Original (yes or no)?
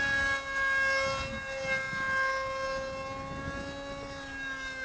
yes